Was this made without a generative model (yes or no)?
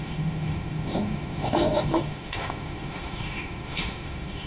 no